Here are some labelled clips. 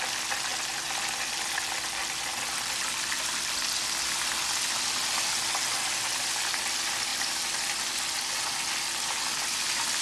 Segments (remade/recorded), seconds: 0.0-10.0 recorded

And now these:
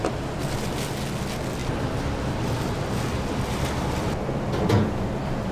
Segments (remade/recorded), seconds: 0.0-5.5 recorded

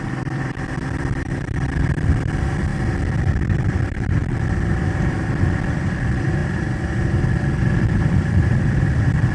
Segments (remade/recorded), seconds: 0.0-2.7 remade; 2.7-3.6 recorded; 3.6-4.2 remade; 4.2-4.7 recorded; 4.7-9.3 remade